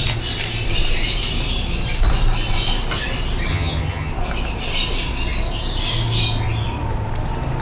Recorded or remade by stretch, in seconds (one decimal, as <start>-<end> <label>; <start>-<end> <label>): 0.0-3.5 recorded; 3.5-4.1 remade; 4.1-7.6 recorded